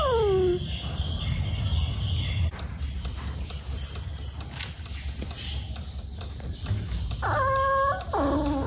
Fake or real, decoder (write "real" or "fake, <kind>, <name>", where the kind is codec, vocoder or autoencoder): real